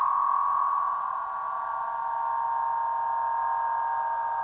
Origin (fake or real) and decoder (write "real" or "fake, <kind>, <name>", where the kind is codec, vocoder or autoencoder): real